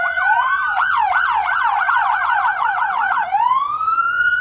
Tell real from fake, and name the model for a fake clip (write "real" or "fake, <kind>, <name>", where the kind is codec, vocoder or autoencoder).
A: fake, vocoder, Vocos